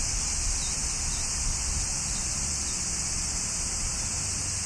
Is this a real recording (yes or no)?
yes